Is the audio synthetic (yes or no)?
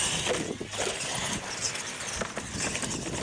no